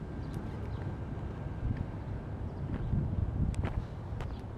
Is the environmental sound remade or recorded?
recorded